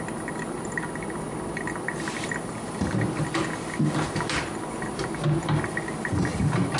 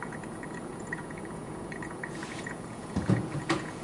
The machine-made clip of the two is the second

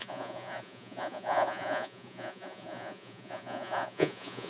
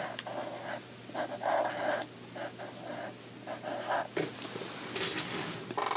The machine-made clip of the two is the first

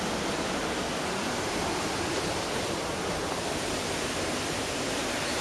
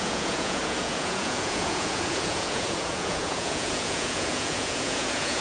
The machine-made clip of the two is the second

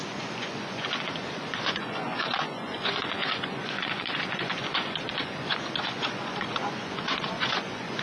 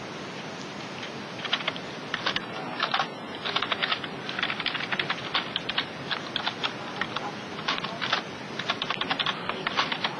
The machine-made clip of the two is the first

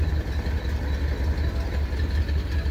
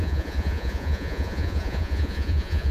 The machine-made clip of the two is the second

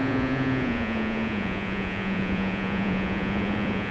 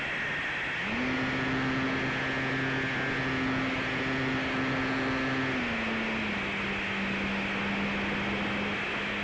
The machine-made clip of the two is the first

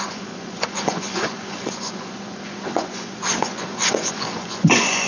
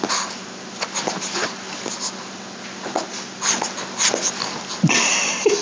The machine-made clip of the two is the first